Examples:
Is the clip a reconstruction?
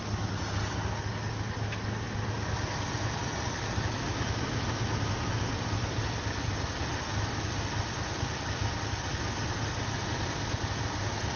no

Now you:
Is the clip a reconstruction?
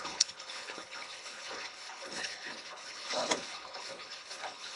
yes